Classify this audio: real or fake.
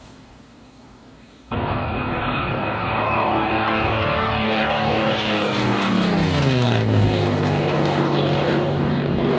fake